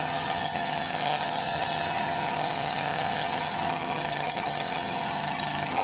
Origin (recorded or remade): remade